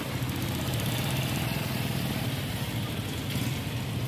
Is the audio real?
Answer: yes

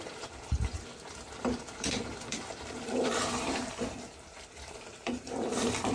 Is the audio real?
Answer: no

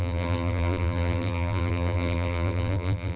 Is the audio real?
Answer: no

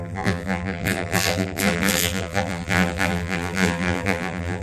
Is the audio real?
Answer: no